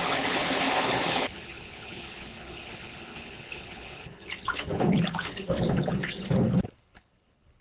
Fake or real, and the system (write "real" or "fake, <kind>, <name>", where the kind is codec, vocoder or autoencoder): fake, codec, HILCodec